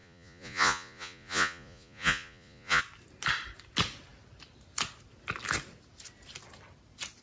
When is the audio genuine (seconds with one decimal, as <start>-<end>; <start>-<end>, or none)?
2.8-7.2